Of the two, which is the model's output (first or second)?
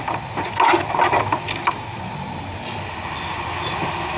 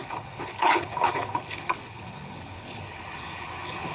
second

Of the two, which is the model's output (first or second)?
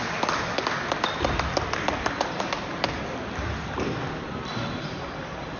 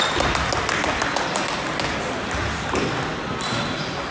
first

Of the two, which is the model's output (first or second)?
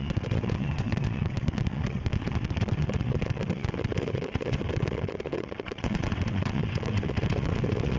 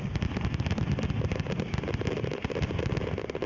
first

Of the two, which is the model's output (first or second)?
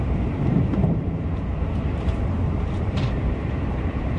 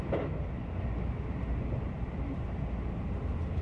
first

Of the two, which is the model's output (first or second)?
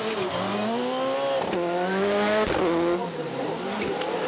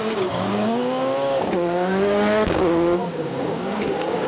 second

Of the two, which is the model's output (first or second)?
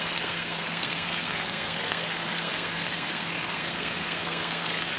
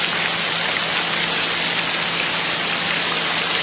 first